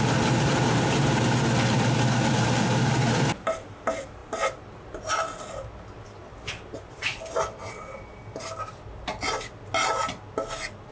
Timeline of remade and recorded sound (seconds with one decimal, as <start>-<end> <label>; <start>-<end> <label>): 0.0-10.9 recorded